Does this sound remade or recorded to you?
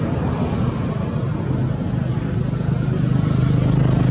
recorded